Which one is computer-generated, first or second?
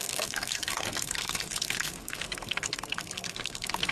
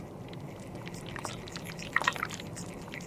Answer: first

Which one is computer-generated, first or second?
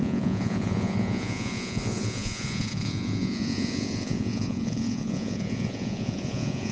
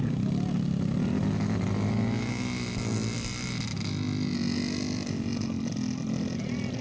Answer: first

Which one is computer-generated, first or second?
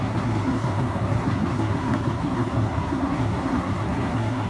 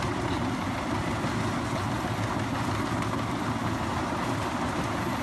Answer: first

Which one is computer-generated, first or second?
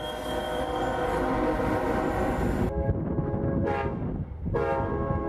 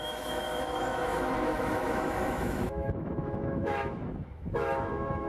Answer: second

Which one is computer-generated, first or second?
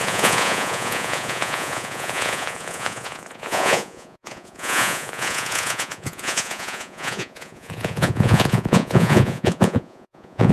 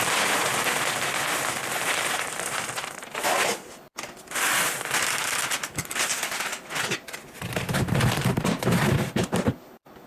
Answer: first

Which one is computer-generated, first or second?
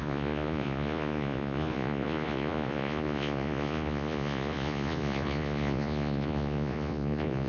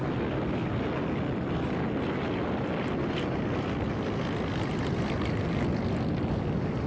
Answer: first